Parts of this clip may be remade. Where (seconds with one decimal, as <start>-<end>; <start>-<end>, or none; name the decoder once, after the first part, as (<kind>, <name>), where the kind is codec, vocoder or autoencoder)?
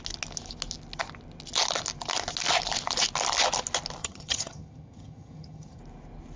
4.0-5.8 (vocoder, HiFi-GAN)